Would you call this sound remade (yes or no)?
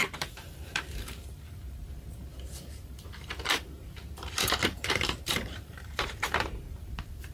yes